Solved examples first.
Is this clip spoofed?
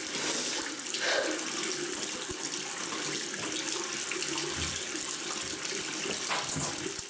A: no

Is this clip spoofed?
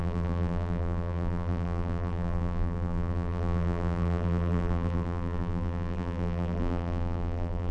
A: yes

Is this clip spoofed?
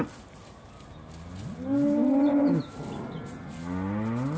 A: no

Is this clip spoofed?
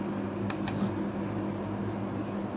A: no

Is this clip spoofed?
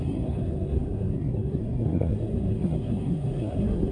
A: yes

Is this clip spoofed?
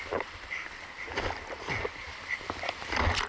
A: no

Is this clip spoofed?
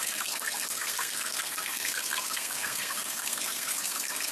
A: yes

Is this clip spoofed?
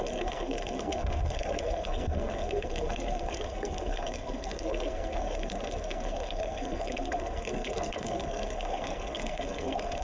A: yes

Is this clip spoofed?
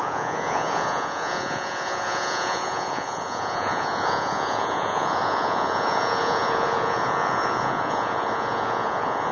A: yes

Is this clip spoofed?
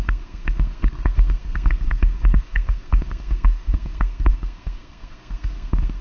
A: yes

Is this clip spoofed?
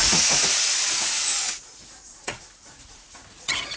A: yes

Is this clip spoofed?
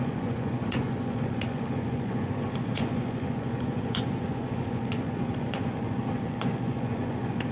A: yes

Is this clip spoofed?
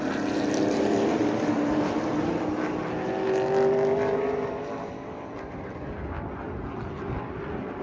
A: no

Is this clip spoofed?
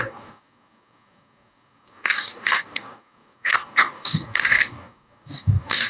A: yes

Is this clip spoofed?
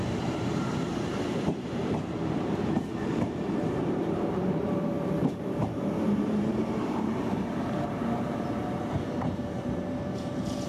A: yes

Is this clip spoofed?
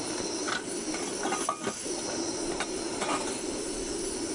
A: no